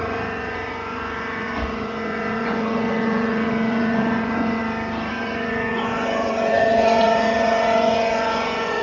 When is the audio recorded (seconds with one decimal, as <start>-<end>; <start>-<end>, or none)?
4.6-5.1